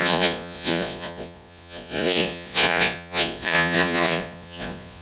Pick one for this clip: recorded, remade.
remade